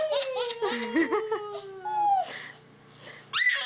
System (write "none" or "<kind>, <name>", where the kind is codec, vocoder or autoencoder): none